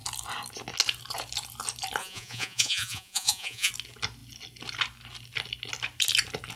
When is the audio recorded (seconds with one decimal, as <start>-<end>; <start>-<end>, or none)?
0.0-2.0; 3.7-6.6